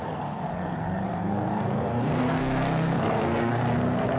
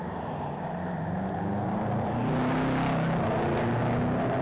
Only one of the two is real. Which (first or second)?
second